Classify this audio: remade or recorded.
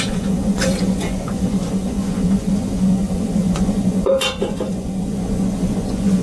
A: remade